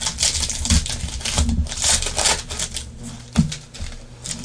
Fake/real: real